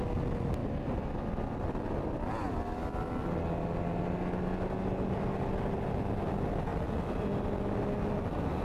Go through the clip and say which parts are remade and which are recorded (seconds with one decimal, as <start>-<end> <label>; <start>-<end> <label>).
0.0-8.6 recorded